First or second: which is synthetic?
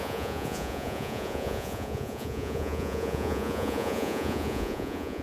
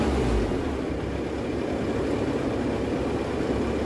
first